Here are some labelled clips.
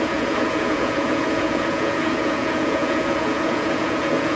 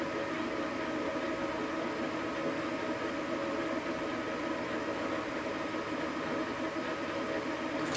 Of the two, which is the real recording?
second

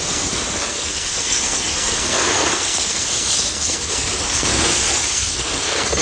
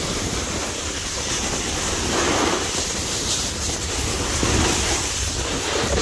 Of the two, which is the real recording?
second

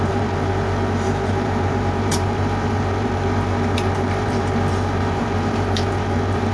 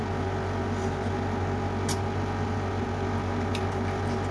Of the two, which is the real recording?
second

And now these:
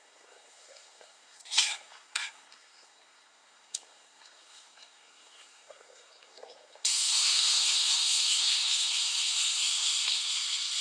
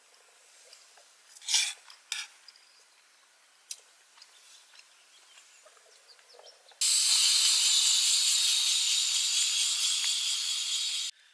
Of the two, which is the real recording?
second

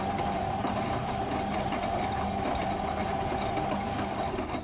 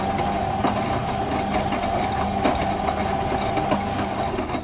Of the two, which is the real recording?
second